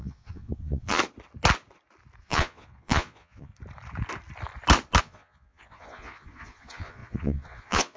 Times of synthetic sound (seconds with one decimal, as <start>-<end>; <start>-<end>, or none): 0.0-1.0; 2.2-3.5; 5.0-8.0